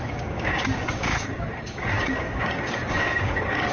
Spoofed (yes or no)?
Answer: yes